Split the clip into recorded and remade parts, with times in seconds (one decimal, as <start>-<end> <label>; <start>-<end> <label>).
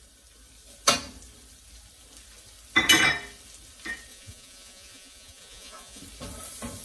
0.0-4.1 recorded; 4.1-6.0 remade; 6.0-6.8 recorded